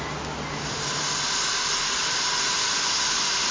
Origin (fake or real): real